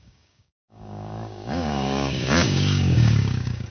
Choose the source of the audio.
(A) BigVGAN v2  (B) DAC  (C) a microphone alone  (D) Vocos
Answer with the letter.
B